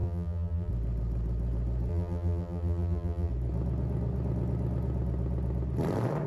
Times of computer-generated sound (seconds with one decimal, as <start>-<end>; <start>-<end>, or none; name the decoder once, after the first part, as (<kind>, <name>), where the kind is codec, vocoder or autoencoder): 0.0-0.7 (vocoder, BigVGAN v2); 1.9-3.3